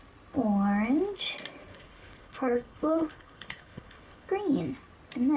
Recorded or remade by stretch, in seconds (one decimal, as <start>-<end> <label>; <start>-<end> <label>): 0.0-1.7 recorded; 1.7-4.3 remade; 4.3-5.4 recorded